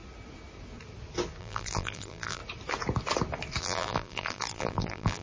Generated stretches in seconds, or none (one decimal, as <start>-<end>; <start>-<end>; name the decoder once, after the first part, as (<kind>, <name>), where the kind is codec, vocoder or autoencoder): 1.4-2.4 (vocoder, BigVGAN v2); 3.6-5.2